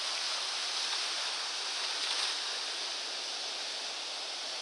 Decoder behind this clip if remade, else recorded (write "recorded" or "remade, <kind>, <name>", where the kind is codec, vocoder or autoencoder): recorded